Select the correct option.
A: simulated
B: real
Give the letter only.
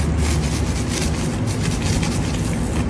B